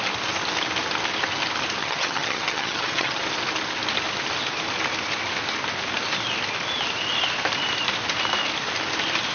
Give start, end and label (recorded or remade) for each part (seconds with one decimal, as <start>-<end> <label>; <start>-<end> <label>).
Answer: 0.0-1.8 recorded; 1.8-3.2 remade; 3.2-9.3 recorded